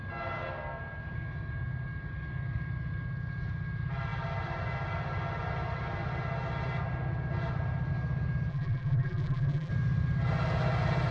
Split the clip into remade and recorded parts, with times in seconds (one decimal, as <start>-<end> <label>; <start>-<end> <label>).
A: 0.0-8.5 recorded; 8.5-9.7 remade; 9.7-11.1 recorded